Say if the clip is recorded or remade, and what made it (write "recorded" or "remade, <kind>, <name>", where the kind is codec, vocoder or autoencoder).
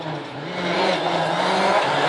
recorded